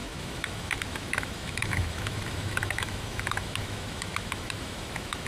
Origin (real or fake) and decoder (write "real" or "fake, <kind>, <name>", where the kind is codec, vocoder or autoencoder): fake, autoencoder, DAC-VAE